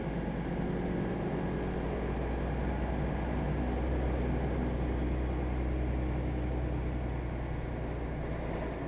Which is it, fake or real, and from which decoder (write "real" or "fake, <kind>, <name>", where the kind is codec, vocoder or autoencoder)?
real